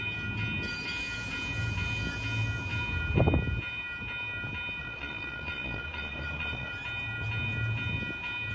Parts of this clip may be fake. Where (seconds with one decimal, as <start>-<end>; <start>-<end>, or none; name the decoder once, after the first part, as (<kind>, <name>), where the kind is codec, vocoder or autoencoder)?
4.8-6.7 (vocoder, Vocos)